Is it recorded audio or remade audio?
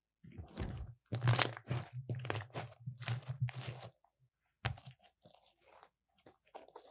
recorded